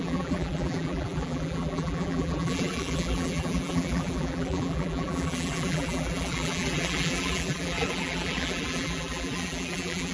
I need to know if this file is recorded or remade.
remade